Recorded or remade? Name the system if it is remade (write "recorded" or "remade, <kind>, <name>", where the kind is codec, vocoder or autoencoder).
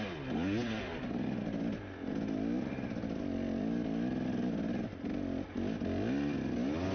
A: recorded